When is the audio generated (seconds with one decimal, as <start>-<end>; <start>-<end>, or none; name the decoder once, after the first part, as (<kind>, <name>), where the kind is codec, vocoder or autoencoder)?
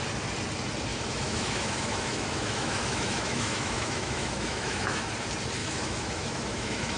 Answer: 0.9-5.1 (autoencoder, DAC-VAE); 5.6-7.0